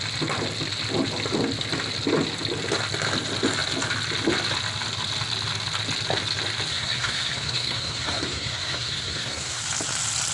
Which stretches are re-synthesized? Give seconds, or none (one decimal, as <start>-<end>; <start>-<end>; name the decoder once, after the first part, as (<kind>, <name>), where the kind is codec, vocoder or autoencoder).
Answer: 6.7-9.6 (codec, SNAC)